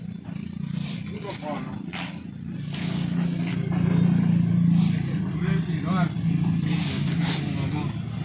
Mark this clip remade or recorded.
recorded